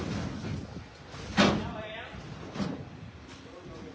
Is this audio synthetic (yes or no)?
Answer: no